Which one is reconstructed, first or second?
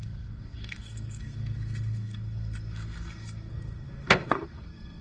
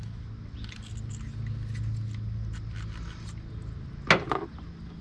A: first